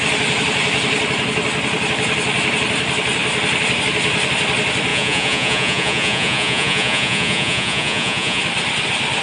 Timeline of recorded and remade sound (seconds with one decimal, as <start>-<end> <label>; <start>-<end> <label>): 0.0-4.9 recorded; 4.9-8.4 remade; 8.4-9.2 recorded